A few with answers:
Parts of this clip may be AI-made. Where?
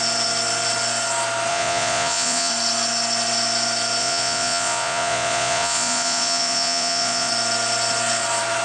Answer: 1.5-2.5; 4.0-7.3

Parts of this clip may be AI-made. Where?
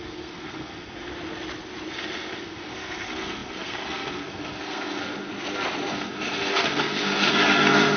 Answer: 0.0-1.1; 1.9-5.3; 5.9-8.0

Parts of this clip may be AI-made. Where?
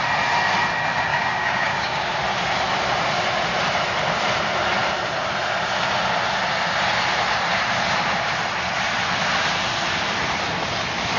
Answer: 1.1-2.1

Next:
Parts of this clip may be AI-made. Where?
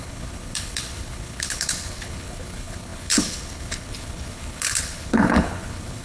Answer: 0.0-6.0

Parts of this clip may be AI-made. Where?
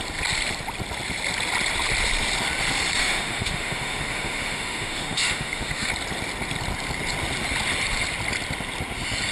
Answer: 3.0-5.9